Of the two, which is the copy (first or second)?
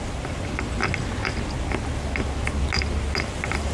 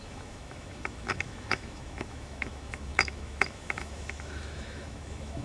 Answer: second